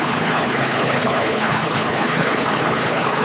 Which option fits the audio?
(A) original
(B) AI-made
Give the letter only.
B